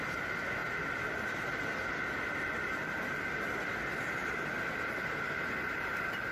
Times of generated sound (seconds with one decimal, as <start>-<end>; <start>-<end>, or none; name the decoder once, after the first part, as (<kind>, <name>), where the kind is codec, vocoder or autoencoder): none